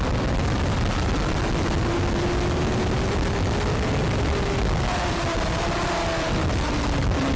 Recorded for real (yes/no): yes